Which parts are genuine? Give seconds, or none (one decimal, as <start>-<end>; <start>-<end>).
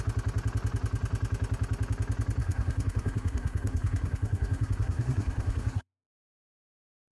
0.0-2.4